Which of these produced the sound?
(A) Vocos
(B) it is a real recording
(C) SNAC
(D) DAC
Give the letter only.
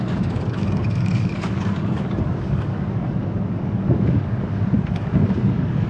D